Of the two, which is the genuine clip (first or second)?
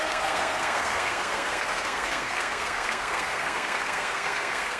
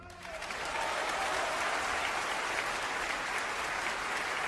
second